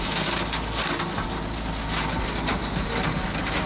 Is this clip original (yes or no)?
yes